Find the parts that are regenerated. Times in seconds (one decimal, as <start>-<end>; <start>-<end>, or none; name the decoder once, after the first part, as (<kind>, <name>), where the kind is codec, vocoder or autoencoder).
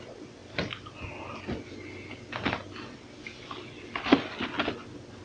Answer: none